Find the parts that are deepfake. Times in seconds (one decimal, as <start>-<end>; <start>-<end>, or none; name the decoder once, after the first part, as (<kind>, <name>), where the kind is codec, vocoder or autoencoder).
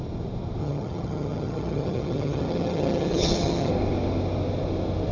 0.6-3.7 (vocoder, HiFi-GAN)